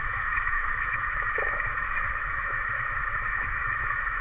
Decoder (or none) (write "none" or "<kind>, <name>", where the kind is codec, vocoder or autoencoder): autoencoder, DAC-VAE